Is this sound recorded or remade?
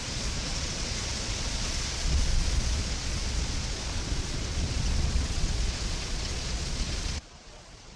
remade